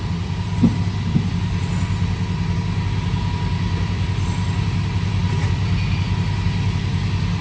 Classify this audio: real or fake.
real